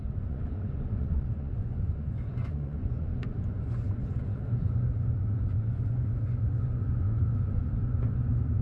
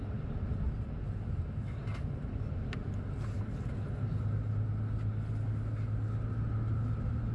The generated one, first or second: first